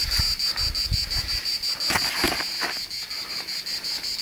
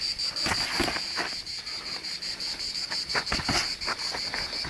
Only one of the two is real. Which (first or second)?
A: first